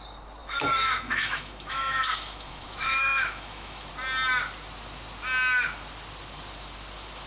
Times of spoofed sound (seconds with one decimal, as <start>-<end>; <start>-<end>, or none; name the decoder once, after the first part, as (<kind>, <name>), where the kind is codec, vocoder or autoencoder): 0.4-3.9 (autoencoder, DAC-VAE)